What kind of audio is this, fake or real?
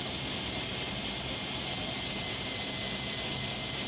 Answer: real